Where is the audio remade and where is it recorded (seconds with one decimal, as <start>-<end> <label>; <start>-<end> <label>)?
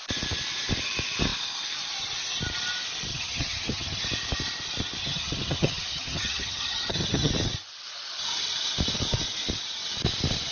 0.0-3.1 recorded; 3.1-4.0 remade; 4.0-5.0 recorded; 5.0-7.3 remade; 7.3-10.5 recorded